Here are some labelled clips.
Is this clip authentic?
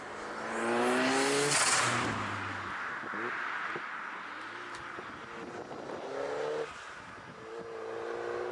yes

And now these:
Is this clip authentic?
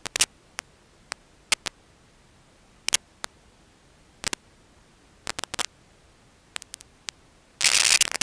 yes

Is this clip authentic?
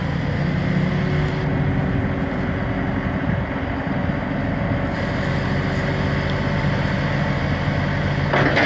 yes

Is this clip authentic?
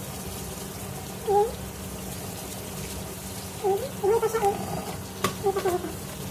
yes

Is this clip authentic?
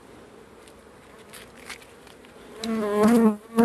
yes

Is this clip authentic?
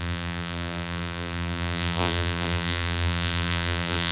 no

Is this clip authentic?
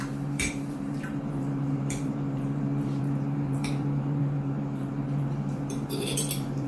no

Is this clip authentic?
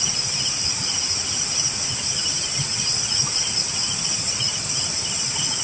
yes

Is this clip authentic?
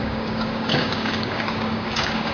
no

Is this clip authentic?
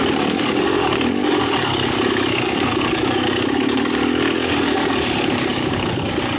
no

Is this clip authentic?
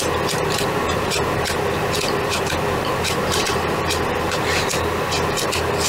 yes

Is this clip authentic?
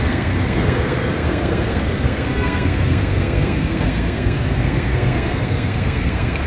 no